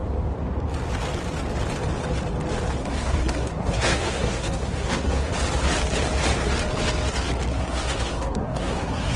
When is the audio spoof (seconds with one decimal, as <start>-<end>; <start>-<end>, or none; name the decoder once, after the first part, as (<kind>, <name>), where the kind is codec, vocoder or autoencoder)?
2.8-5.3 (codec, SNAC); 7.5-9.2